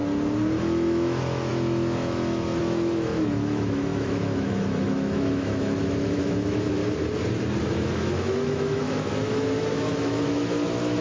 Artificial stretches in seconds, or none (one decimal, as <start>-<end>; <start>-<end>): 0.6-6.8; 7.6-11.0